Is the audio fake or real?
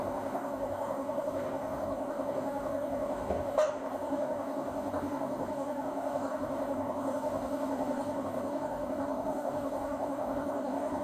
fake